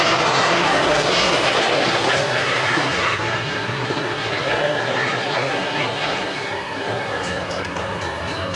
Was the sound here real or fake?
fake